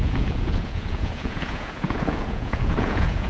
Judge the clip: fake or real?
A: fake